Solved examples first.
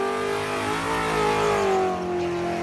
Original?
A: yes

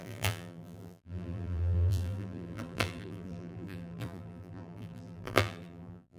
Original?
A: no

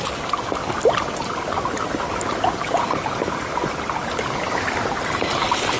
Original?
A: yes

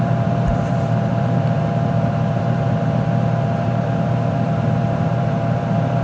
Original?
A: no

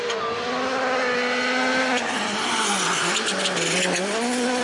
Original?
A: yes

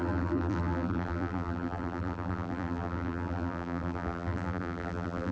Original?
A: no